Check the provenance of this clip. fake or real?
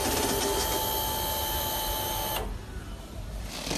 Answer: real